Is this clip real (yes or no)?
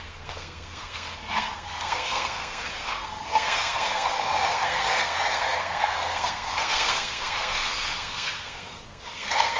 no